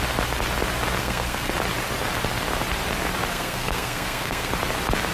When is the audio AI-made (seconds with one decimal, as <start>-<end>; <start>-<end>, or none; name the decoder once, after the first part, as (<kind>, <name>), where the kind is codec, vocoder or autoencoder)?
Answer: 1.0-1.5 (codec, SNAC); 3.3-4.5